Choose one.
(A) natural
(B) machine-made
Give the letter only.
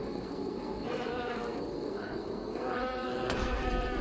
B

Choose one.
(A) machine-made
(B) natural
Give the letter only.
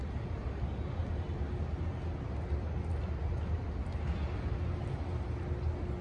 B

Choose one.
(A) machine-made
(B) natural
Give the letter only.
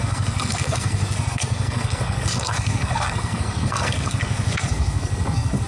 A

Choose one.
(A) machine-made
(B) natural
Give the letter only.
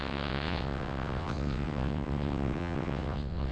A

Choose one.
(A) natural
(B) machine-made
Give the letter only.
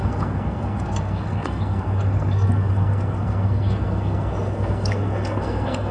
B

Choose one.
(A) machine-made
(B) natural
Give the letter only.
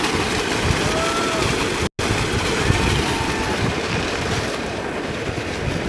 B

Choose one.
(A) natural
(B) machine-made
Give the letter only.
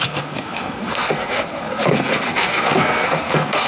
B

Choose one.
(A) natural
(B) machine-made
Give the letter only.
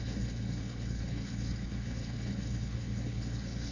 B